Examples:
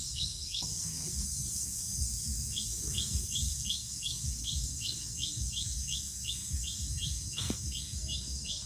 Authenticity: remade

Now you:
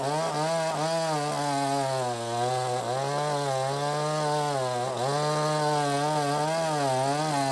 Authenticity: recorded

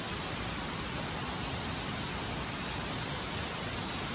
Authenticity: recorded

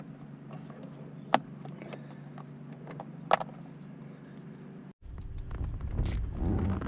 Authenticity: recorded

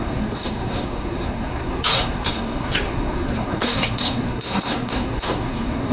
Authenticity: remade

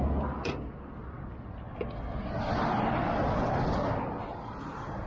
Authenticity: recorded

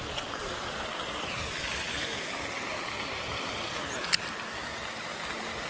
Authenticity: recorded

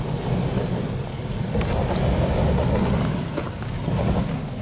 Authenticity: recorded